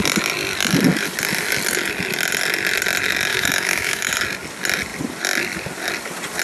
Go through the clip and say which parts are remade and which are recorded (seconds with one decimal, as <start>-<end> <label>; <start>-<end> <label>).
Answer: 0.0-3.3 recorded; 3.3-4.1 remade; 4.1-6.4 recorded